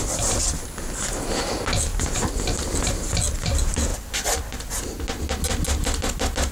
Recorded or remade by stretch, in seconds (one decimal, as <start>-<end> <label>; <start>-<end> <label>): 0.0-1.9 recorded; 1.9-2.9 remade; 2.9-3.9 recorded; 3.9-5.0 remade; 5.0-6.5 recorded